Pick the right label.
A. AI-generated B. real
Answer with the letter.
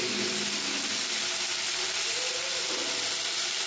B